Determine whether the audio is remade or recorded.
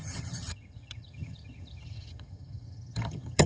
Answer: remade